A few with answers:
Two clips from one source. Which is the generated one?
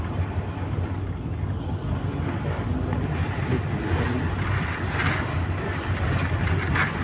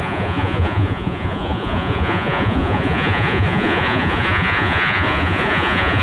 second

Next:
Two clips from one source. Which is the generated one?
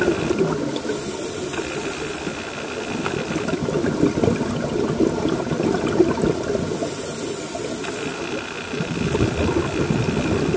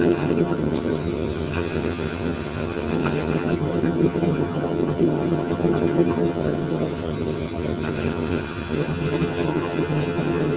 second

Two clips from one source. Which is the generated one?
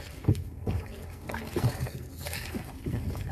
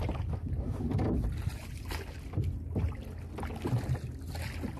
first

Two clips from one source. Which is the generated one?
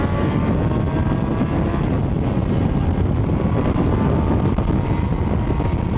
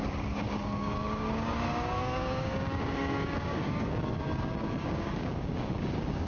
second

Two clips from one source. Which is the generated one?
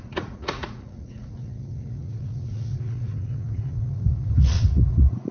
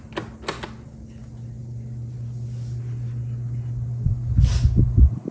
first